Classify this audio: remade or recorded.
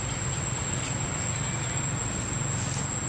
recorded